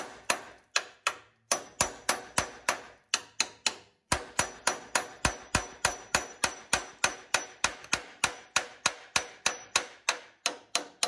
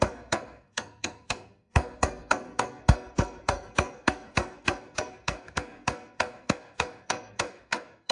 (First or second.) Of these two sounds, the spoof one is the second